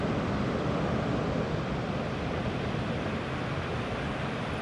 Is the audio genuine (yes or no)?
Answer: yes